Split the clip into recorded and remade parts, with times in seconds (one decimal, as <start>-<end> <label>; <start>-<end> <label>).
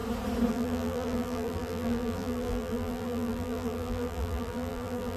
0.0-0.5 recorded; 0.5-5.2 remade